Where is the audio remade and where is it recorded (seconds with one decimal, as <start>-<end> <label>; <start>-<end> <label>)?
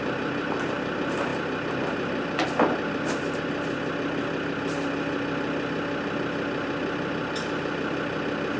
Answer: 0.0-8.6 recorded